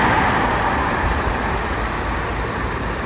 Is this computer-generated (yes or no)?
no